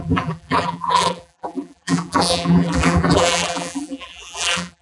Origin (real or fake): fake